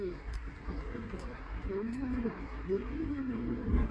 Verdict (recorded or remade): remade